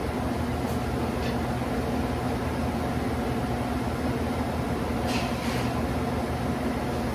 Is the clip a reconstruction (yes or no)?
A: no